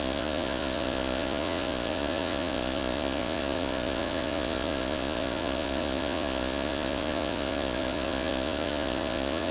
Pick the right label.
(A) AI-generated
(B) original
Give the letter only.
A